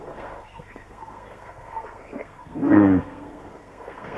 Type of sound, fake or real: fake